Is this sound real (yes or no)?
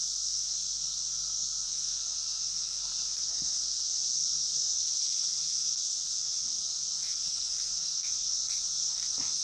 no